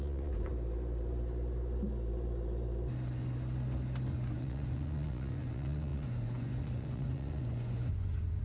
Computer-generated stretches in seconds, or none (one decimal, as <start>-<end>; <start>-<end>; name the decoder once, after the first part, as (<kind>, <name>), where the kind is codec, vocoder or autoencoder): 0.0-0.5 (vocoder, Vocos); 4.1-8.4